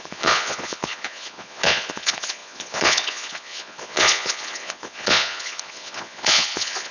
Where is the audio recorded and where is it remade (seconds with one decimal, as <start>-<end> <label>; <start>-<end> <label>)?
0.0-6.9 remade